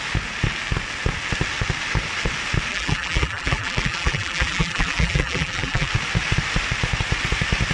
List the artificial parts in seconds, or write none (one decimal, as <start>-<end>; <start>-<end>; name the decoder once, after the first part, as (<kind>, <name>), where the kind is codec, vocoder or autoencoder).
2.7-5.9 (vocoder, BigVGAN v2)